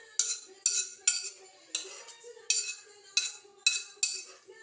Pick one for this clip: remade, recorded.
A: recorded